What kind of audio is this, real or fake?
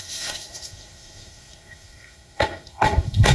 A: fake